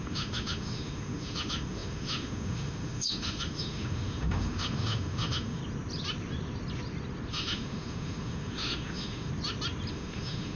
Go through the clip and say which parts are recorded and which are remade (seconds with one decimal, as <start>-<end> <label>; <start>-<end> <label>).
0.0-5.6 remade; 5.6-7.3 recorded; 7.3-9.3 remade; 9.3-9.9 recorded; 9.9-10.6 remade